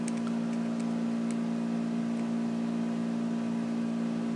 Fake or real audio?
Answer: real